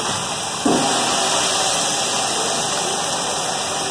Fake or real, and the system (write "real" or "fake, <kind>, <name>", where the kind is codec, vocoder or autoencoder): real